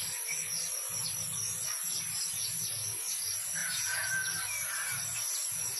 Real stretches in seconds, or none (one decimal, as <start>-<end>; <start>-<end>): 0.0-3.6; 4.1-5.8